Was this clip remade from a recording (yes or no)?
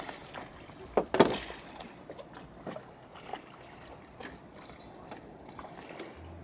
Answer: no